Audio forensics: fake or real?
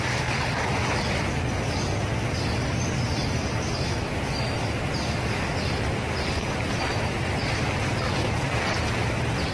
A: real